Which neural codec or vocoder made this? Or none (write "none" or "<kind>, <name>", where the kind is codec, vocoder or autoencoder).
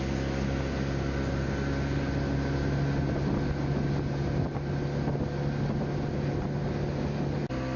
none